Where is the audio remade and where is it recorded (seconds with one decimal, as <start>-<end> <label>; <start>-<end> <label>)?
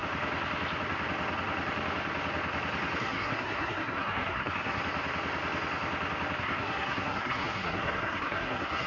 0.0-3.0 recorded; 3.0-4.8 remade; 4.8-6.4 recorded; 6.4-8.9 remade